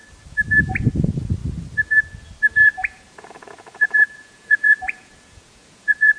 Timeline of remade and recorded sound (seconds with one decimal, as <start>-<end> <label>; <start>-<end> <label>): 0.0-2.6 recorded; 2.6-6.2 remade